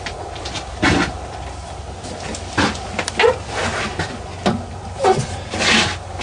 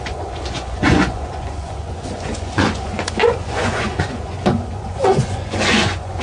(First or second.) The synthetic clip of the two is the second